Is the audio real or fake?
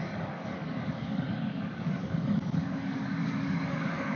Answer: fake